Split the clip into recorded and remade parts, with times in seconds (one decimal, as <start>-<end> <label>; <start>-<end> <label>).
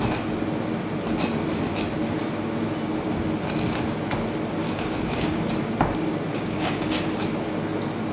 0.0-4.6 recorded; 4.6-5.5 remade; 5.5-6.3 recorded; 6.3-7.1 remade; 7.1-8.1 recorded